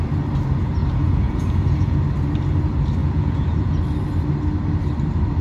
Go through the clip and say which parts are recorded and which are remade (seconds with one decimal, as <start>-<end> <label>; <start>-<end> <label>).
0.0-0.8 recorded; 0.8-2.0 remade; 2.0-3.0 recorded; 3.0-3.8 remade; 3.8-5.4 recorded